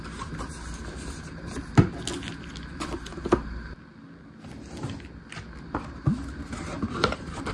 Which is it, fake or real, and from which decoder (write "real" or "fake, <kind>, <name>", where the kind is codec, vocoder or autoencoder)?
real